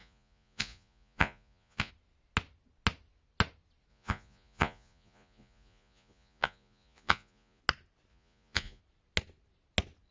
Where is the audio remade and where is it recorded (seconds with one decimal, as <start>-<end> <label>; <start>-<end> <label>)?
0.0-1.9 remade; 1.9-3.9 recorded; 3.9-7.6 remade; 7.6-8.1 recorded; 8.1-8.8 remade; 8.8-10.1 recorded